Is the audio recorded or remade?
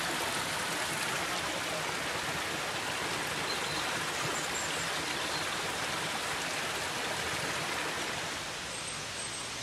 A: recorded